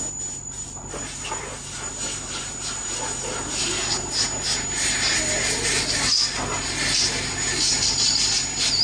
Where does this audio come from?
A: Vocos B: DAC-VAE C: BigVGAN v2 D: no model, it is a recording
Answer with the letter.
D